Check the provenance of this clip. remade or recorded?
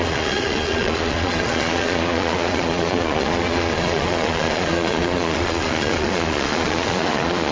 remade